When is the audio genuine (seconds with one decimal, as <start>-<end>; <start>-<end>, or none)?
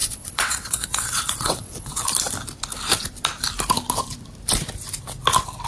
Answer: 2.0-5.7